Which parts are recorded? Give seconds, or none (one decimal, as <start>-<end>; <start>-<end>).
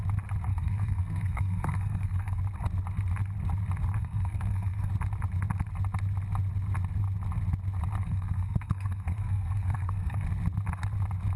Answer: 0.0-0.5; 2.4-4.0; 4.9-8.0; 10.2-11.4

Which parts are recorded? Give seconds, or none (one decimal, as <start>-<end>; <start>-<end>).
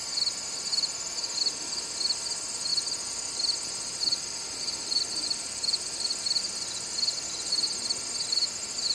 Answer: 0.0-0.7; 1.4-2.7; 7.5-8.9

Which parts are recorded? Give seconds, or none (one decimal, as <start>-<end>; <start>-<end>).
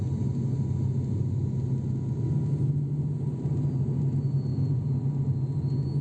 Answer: 0.0-4.5; 5.0-6.0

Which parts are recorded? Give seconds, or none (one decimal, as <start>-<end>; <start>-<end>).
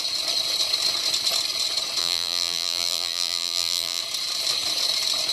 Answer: 0.0-2.0; 4.0-5.3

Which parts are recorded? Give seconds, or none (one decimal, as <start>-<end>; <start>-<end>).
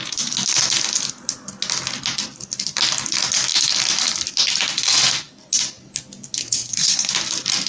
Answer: 0.0-6.4; 7.1-7.7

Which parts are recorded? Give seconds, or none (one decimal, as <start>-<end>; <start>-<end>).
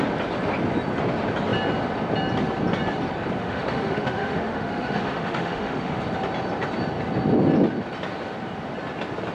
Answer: 0.0-3.4; 6.0-9.3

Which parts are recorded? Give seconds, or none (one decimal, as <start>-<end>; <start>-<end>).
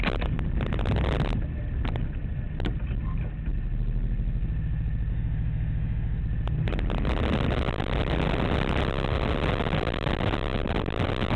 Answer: 0.0-5.1; 6.2-11.4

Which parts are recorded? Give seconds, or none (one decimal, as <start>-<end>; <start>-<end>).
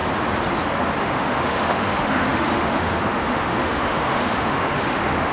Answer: 0.0-1.0